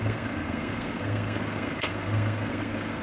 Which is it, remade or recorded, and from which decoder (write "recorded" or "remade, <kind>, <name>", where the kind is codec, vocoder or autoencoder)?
remade, codec, SNAC